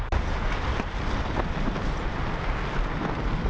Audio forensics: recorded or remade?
recorded